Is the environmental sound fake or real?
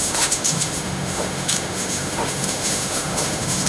fake